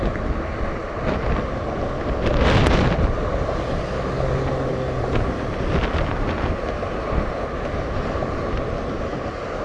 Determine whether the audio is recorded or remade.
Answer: recorded